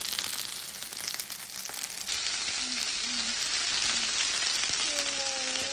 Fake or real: real